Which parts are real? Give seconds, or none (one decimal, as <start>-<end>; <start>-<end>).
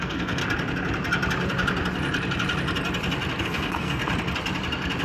0.4-3.4; 4.0-5.0